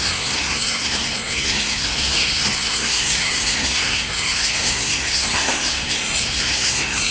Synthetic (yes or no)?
yes